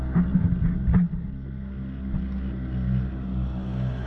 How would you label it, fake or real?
real